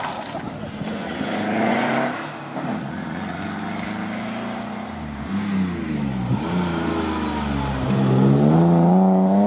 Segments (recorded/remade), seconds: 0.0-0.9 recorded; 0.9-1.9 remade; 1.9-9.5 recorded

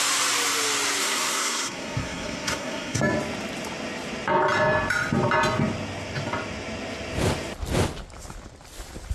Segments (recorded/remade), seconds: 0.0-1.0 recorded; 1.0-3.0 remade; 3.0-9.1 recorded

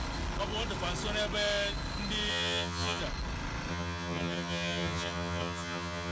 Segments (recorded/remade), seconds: 0.0-2.3 recorded; 2.3-3.0 remade; 3.0-3.7 recorded; 3.7-6.1 remade

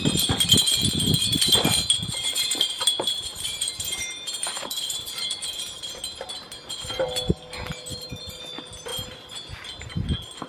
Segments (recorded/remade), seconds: 0.0-1.1 recorded; 1.1-5.2 remade; 5.2-7.9 recorded; 7.9-8.4 remade; 8.4-10.5 recorded

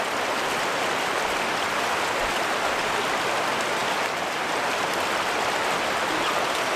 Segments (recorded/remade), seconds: 0.0-6.8 recorded